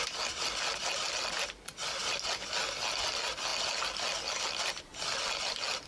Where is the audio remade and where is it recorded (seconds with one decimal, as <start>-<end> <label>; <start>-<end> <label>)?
0.0-5.9 recorded